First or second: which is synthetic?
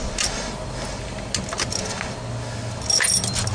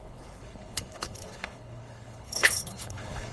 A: second